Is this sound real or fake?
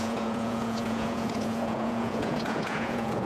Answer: fake